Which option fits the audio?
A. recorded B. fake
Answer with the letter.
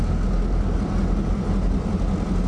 A